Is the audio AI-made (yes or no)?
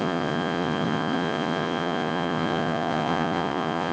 yes